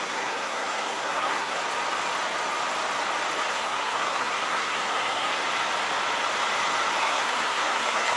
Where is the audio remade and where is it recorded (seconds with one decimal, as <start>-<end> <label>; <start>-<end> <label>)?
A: 0.0-1.6 remade; 1.6-3.5 recorded; 3.5-5.4 remade; 5.4-7.0 recorded; 7.0-8.2 remade